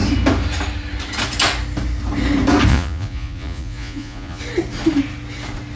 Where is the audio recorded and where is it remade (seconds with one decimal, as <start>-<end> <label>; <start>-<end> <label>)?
0.0-2.7 recorded; 2.7-4.4 remade; 4.4-5.8 recorded